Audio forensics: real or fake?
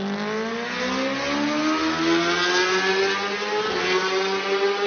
real